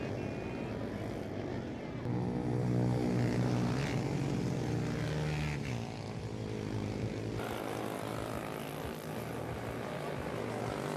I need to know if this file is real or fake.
real